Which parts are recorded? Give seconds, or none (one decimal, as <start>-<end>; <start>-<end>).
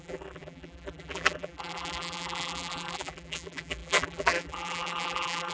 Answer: none